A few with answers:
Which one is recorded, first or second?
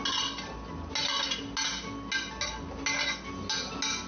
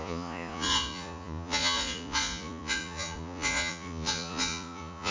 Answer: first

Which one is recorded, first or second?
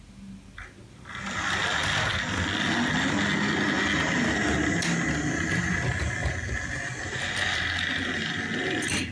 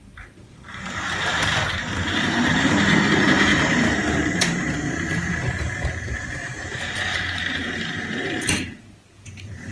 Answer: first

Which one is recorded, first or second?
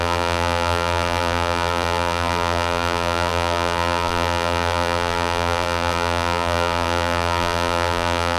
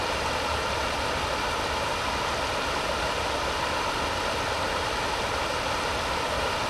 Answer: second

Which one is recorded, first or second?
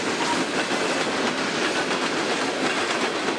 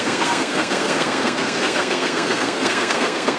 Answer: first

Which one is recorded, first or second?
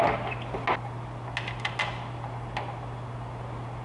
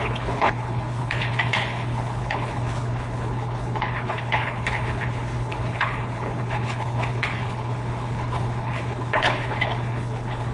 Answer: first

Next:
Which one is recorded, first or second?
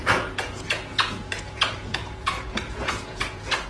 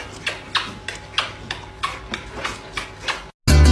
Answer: second